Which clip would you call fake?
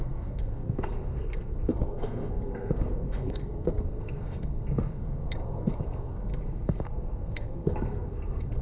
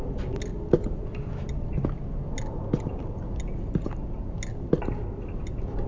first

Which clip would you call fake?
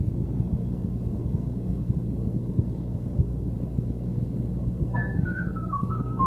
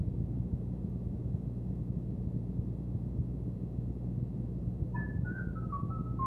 first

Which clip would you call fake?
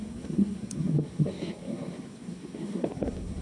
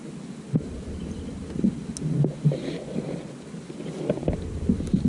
first